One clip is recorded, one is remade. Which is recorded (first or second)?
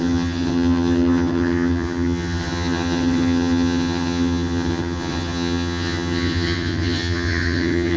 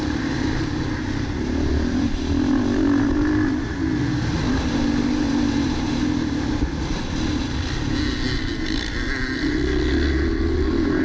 second